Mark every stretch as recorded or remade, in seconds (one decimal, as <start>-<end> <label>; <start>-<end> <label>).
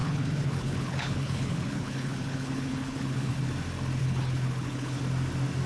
0.0-3.4 remade; 3.4-4.0 recorded; 4.0-5.0 remade; 5.0-5.7 recorded